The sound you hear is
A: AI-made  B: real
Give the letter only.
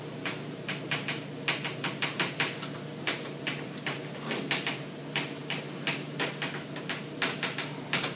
B